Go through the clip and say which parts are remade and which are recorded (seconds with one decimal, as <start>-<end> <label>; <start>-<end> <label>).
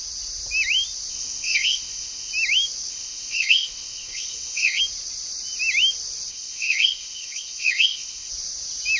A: 0.0-1.1 recorded; 1.1-2.3 remade; 2.3-2.9 recorded; 2.9-4.8 remade; 4.8-6.3 recorded; 6.3-8.3 remade; 8.3-9.0 recorded